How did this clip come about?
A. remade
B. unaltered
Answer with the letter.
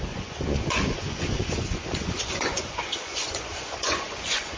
A